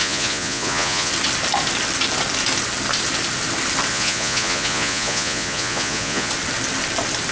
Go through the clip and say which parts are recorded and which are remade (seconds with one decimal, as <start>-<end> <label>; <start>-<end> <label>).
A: 0.0-1.1 remade; 1.1-3.9 recorded; 3.9-6.3 remade; 6.3-7.3 recorded